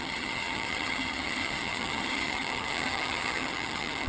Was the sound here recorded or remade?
remade